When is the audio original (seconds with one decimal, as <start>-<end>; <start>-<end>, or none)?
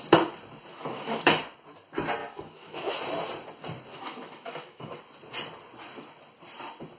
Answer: 0.0-0.7; 1.4-2.2; 2.9-3.9; 5.0-7.0